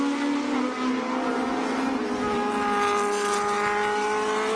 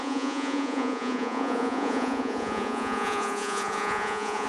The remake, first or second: second